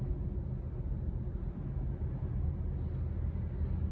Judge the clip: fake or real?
real